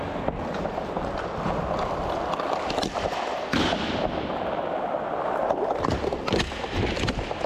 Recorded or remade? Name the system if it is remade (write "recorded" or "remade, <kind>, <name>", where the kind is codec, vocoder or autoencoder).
recorded